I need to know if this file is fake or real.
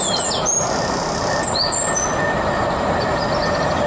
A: real